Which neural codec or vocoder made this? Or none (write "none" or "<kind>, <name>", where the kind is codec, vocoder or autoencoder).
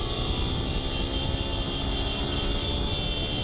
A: none